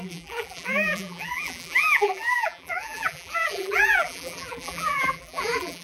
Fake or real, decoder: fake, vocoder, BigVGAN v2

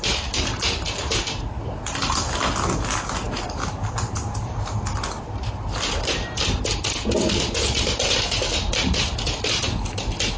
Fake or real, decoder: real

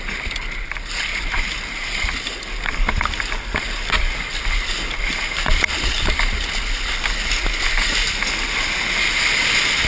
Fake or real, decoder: real